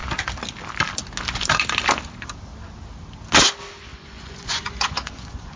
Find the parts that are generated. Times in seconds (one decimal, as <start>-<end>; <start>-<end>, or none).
3.9-5.6